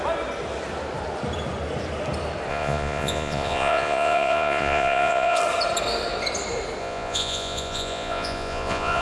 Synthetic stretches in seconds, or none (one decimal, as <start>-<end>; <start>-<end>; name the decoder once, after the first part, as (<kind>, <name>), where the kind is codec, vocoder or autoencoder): 2.5-5.4 (vocoder, Vocos); 6.8-9.0